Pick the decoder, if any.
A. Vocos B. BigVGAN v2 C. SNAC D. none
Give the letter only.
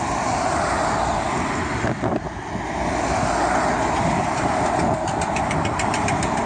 D